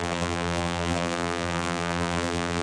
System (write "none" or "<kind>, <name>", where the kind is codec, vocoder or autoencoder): vocoder, BigVGAN v2